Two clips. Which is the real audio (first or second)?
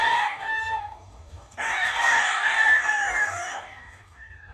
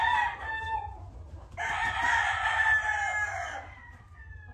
second